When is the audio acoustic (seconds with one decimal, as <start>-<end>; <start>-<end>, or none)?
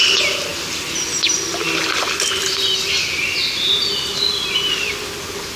0.0-5.6